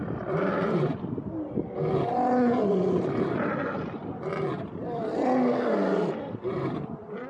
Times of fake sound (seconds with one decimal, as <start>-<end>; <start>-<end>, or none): none